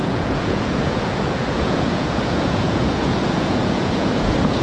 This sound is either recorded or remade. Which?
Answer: remade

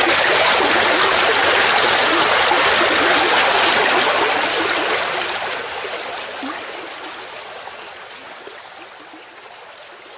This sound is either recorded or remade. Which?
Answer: recorded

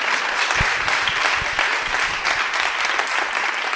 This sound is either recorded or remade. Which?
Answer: recorded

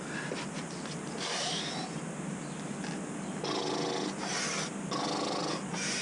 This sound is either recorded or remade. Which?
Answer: recorded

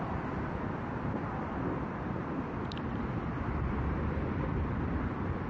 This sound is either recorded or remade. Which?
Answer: remade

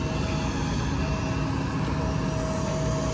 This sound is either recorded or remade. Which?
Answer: recorded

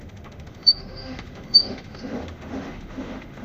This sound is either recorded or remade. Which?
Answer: remade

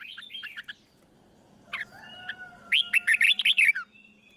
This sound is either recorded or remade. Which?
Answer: recorded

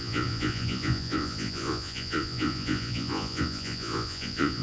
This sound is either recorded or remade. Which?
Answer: remade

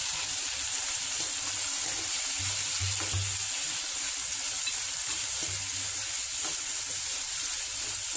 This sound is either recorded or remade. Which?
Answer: recorded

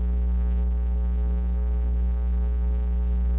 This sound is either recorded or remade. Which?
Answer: remade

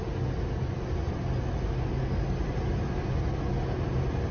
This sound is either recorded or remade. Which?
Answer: recorded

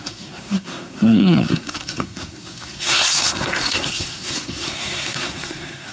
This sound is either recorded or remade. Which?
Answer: remade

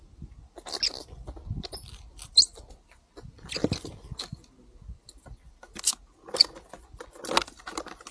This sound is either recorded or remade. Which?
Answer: recorded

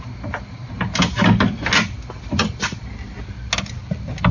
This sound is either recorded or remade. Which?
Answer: recorded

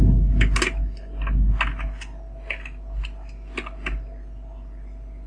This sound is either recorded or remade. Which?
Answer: recorded